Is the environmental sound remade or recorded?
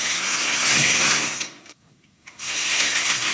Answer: remade